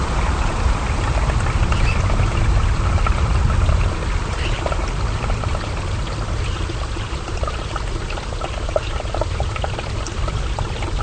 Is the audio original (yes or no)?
yes